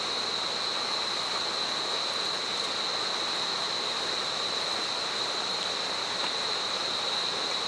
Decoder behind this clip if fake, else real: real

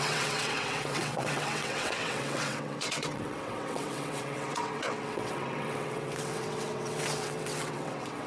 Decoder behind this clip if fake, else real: fake, vocoder, WaveNeXt